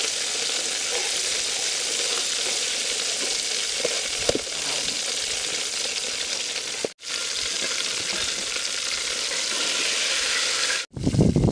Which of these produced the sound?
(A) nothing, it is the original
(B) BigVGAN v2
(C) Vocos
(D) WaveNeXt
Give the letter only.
A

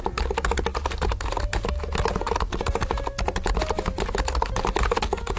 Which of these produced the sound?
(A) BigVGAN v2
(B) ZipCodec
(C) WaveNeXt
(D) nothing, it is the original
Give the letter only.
D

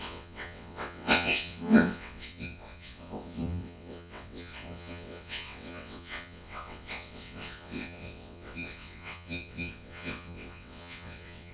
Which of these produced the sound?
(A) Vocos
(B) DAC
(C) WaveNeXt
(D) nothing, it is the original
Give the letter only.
C